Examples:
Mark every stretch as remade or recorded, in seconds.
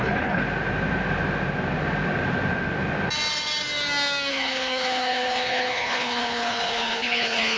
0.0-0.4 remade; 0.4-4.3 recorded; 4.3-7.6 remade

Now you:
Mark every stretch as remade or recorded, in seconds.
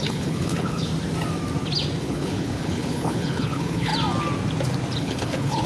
0.0-0.9 remade; 0.9-2.0 recorded; 2.0-3.9 remade; 3.9-5.0 recorded; 5.0-5.7 remade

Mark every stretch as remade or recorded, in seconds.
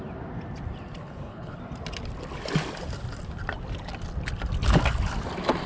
0.0-1.0 recorded; 1.0-1.6 remade; 1.6-5.7 recorded